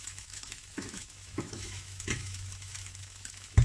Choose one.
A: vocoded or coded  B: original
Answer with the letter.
A